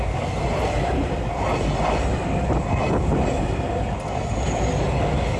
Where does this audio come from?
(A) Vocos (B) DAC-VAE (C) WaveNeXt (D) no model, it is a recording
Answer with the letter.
D